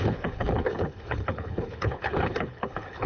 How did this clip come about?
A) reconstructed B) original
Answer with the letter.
A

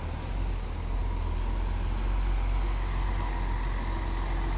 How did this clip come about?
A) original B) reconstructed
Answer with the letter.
A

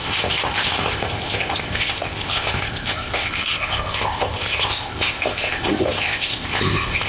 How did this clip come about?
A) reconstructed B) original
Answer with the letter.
A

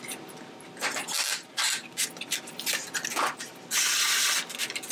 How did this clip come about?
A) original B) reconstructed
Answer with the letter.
A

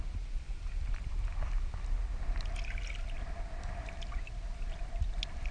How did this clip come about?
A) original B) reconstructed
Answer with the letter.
A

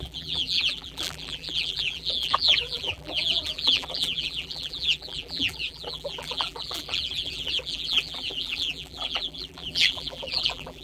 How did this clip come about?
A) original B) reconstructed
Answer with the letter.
B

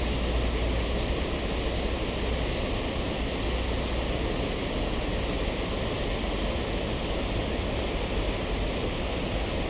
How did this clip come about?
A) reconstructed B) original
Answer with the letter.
B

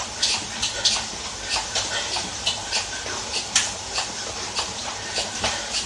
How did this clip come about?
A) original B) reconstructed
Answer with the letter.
B